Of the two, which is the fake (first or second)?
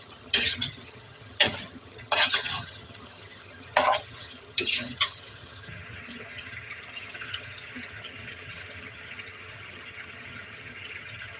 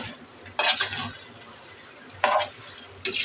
first